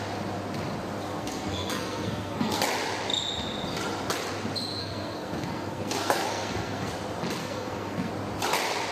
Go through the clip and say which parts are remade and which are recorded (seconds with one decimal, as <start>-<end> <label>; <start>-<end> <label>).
0.0-1.1 recorded; 1.1-2.6 remade; 2.6-4.8 recorded; 4.8-6.9 remade; 6.9-7.4 recorded; 7.4-8.1 remade; 8.1-8.9 recorded